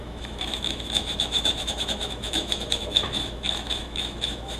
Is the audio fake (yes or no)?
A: yes